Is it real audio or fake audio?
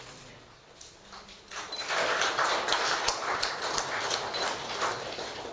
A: real